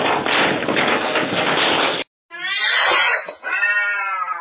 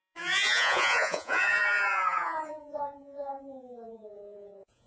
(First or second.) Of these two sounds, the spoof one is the second